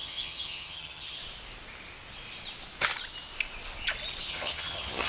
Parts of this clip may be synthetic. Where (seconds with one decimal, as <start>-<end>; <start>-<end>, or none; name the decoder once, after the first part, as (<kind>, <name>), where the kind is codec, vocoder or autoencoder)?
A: 0.0-1.2 (vocoder, HiFi-GAN); 4.3-5.1